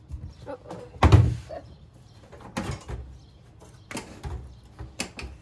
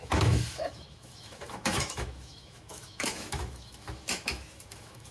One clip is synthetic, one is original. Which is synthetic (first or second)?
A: second